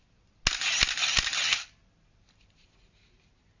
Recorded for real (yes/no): yes